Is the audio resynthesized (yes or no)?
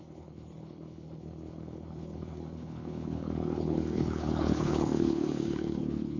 yes